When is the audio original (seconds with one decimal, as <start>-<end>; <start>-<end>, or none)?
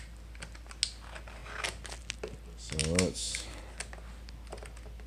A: 0.0-2.8; 3.6-5.1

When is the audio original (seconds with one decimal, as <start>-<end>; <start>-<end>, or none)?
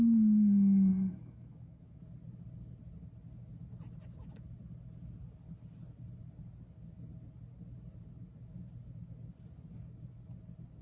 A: 0.0-0.9; 2.0-10.8